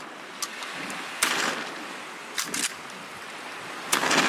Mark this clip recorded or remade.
recorded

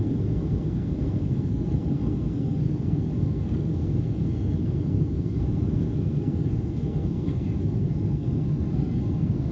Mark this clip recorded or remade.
remade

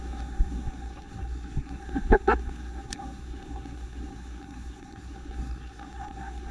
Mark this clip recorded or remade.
remade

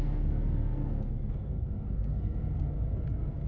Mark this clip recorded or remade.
remade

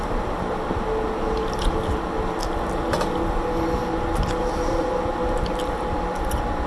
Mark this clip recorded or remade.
recorded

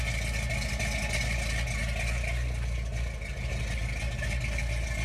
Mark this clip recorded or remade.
recorded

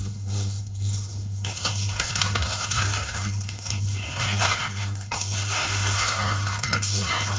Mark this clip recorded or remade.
remade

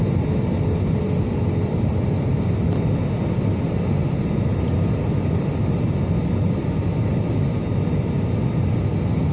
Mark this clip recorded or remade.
recorded